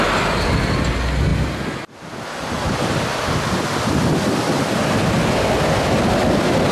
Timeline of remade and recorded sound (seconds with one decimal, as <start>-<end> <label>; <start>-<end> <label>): 0.0-6.7 recorded